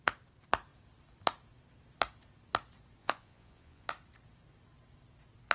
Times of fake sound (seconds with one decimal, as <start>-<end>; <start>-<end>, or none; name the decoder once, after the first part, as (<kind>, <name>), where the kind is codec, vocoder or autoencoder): 3.0-3.9 (vocoder, Vocos)